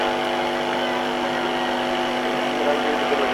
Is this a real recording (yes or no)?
yes